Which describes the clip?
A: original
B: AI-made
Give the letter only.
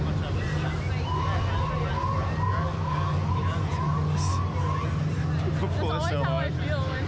A